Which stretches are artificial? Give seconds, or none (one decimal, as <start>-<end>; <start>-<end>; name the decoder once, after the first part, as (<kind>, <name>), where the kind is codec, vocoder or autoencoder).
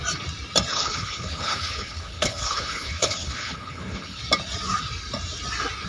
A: 0.7-4.2 (codec, HILCodec)